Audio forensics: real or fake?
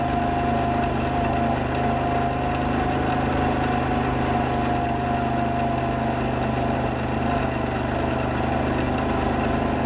real